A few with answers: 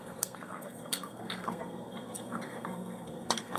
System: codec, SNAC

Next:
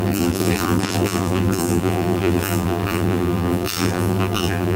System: vocoder, BigVGAN v2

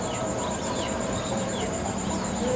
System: vocoder, BigVGAN v2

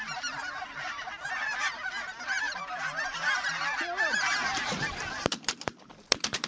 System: vocoder, BigVGAN v2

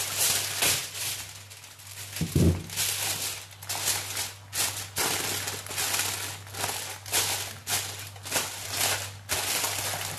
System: none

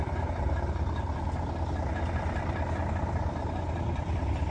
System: none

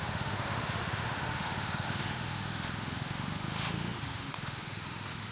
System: autoencoder, DAC-VAE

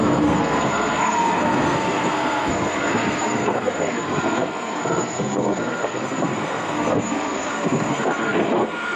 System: codec, SNAC